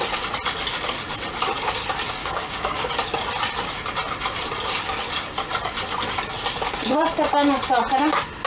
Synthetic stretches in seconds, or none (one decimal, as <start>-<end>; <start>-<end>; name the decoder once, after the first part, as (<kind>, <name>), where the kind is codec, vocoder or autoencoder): 2.2-2.9 (codec, DAC)